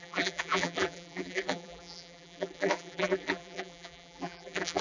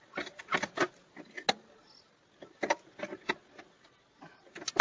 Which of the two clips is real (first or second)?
second